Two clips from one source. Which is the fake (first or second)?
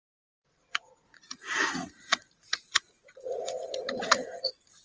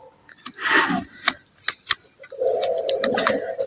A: first